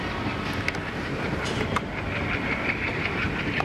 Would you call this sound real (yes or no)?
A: yes